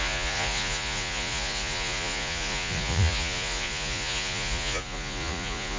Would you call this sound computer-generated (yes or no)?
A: yes